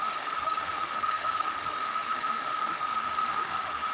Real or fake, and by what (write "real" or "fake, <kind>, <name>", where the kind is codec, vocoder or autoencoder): fake, autoencoder, DAC-VAE